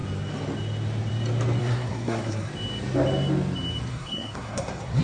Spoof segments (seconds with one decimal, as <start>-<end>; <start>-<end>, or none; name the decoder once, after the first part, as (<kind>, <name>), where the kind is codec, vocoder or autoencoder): 1.6-2.5 (codec, SNAC); 3.9-5.0